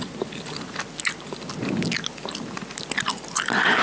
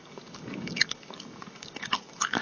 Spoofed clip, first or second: second